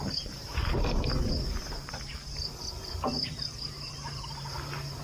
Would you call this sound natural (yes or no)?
yes